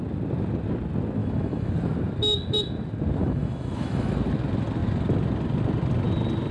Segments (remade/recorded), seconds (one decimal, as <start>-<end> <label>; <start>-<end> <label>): 0.0-1.2 recorded; 1.2-1.7 remade; 1.7-3.2 recorded; 3.2-4.1 remade; 4.1-6.5 recorded